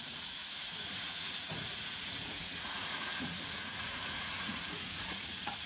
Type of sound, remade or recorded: remade